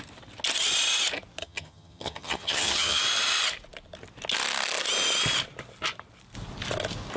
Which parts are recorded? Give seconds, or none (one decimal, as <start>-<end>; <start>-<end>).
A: 0.0-1.4; 3.0-7.2